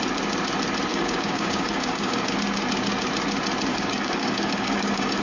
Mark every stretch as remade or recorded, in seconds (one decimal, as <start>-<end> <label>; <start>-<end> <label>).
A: 0.0-0.9 recorded; 0.9-2.3 remade; 2.3-3.7 recorded; 3.7-5.2 remade